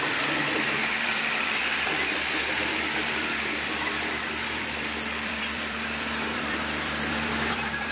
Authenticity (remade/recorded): remade